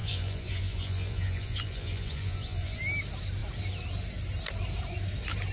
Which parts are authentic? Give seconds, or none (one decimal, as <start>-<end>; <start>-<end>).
2.8-5.5